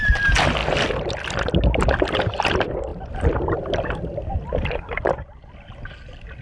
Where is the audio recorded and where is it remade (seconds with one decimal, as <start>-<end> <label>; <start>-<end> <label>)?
0.0-6.4 recorded

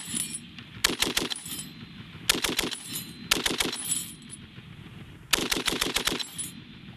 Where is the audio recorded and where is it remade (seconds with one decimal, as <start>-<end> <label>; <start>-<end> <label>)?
0.0-5.4 recorded; 5.4-6.0 remade; 6.0-7.0 recorded

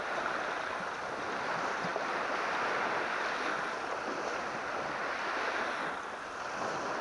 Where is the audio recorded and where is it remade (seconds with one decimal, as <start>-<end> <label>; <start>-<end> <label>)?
0.0-7.0 recorded

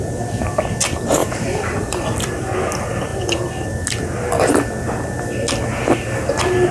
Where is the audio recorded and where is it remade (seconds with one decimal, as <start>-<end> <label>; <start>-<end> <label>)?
0.0-1.2 recorded; 1.2-2.0 remade; 2.0-6.7 recorded

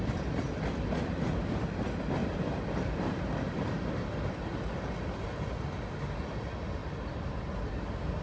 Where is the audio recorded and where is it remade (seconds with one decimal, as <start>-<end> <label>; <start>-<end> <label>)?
0.0-2.2 recorded; 2.2-4.0 remade; 4.0-8.2 recorded

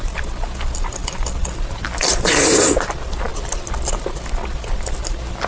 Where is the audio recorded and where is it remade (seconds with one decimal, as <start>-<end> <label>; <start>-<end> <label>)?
0.0-1.0 recorded; 1.0-2.9 remade; 2.9-5.5 recorded